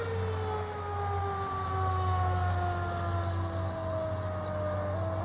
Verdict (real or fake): real